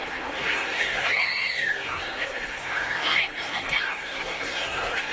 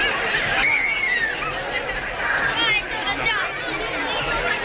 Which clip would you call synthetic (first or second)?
first